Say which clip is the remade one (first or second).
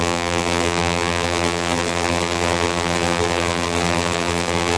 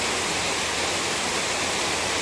first